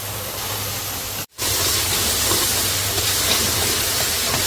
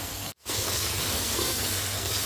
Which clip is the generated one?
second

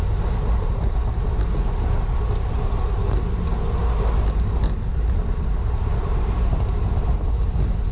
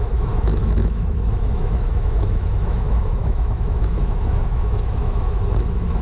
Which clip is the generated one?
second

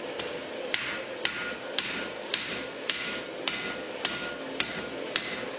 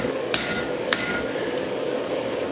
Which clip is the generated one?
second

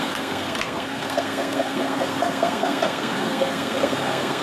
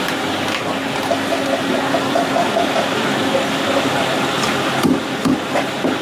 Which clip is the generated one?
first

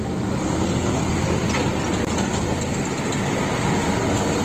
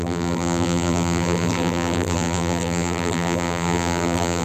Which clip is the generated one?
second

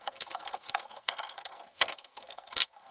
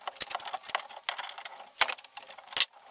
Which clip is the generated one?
first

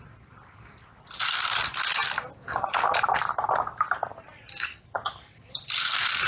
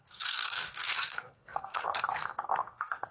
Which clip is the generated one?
second